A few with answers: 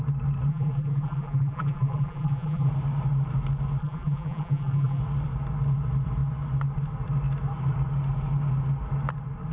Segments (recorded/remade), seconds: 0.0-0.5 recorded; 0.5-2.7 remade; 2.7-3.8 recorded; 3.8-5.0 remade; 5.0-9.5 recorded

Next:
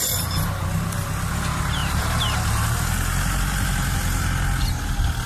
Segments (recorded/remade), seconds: 0.0-1.8 recorded; 1.8-4.3 remade; 4.3-5.3 recorded

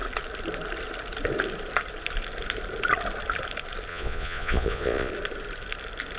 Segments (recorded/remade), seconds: 0.0-3.9 recorded; 3.9-5.1 remade; 5.1-6.2 recorded